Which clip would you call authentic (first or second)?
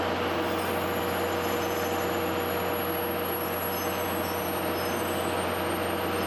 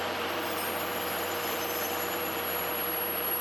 first